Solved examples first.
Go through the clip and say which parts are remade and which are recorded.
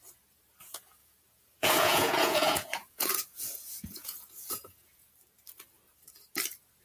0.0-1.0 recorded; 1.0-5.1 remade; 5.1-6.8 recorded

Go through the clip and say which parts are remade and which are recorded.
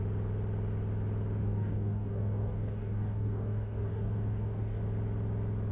0.0-1.4 recorded; 1.4-4.8 remade; 4.8-5.7 recorded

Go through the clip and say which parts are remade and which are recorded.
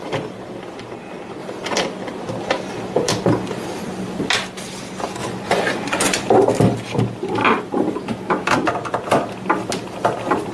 0.0-5.2 recorded; 5.2-6.3 remade; 6.3-10.5 recorded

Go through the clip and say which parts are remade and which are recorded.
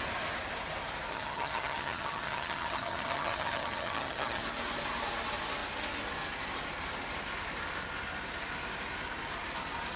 0.0-1.1 recorded; 1.1-4.4 remade; 4.4-10.0 recorded